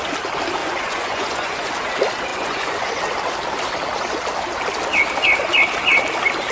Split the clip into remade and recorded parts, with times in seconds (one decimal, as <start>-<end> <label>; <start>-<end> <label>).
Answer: 0.0-0.6 recorded; 0.6-1.7 remade; 1.7-2.3 recorded; 2.3-3.0 remade; 3.0-6.5 recorded